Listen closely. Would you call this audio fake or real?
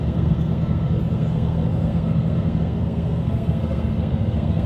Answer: fake